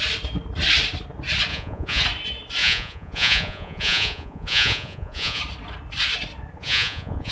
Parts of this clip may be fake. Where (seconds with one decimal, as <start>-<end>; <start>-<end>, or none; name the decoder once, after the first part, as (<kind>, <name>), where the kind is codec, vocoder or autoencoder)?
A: 1.5-2.0 (vocoder, Vocos); 2.6-5.4; 6.6-7.3